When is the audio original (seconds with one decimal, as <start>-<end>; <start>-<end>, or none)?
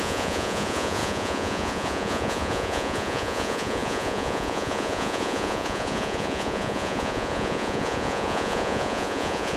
none